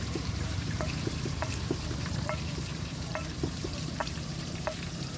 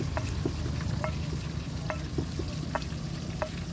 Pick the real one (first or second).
second